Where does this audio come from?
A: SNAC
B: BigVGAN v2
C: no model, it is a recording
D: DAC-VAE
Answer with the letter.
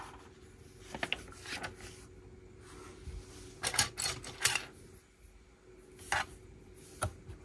C